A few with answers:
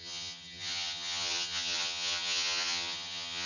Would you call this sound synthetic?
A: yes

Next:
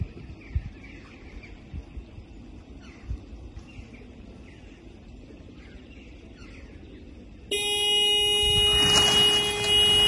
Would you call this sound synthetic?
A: no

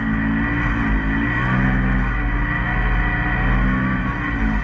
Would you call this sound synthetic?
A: no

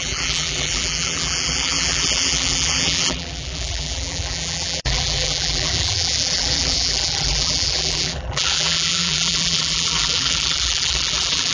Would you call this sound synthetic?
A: yes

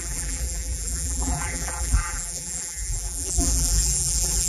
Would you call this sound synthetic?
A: yes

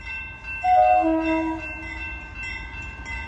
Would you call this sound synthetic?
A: no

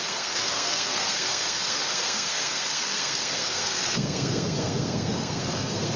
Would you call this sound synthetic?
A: yes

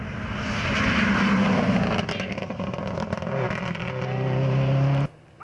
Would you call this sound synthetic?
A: no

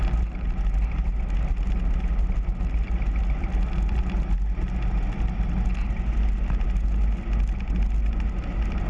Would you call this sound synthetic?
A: no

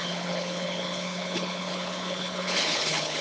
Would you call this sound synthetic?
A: yes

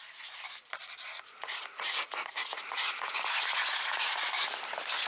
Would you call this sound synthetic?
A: no